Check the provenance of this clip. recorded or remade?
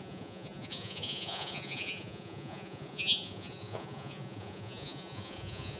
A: remade